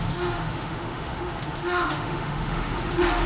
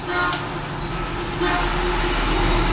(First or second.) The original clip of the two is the second